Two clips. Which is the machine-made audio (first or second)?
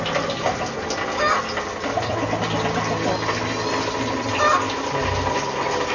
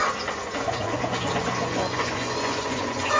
second